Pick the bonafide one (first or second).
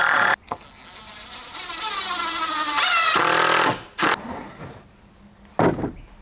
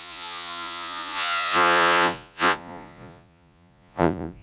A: first